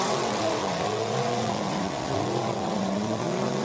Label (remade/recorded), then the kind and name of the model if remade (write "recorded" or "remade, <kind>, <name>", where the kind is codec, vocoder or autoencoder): remade, vocoder, WaveNeXt